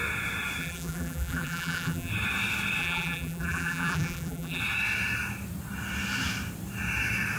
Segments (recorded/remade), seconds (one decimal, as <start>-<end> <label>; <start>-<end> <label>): 0.0-0.6 recorded; 0.6-2.1 remade; 2.1-2.8 recorded; 2.8-4.6 remade; 4.6-7.4 recorded